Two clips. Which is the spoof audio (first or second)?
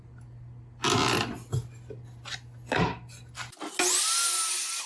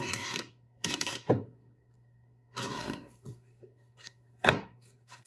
second